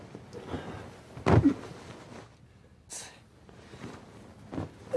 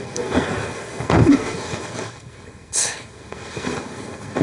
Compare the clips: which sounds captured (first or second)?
first